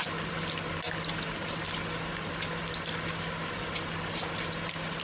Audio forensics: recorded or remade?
recorded